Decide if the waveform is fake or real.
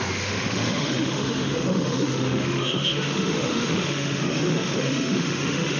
fake